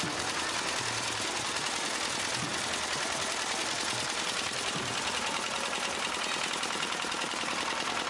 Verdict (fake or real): fake